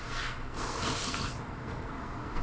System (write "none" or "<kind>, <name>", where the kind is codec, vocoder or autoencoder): codec, SNAC